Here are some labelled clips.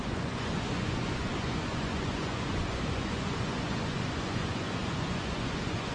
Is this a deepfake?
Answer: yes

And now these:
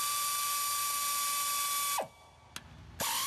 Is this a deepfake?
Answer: no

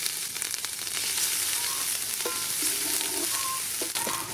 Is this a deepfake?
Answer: no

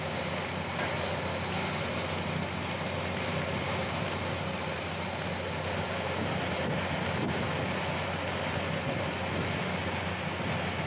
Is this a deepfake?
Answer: no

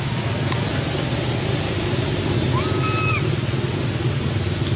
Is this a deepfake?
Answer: no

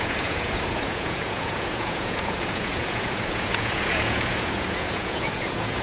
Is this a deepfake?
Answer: yes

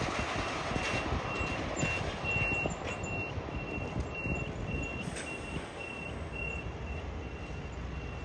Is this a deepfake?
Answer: no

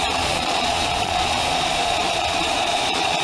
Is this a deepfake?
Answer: yes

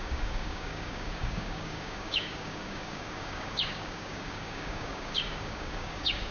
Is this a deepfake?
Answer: yes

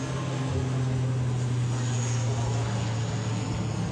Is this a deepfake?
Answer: no